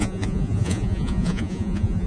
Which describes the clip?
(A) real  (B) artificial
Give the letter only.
B